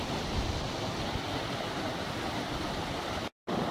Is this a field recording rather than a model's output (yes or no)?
yes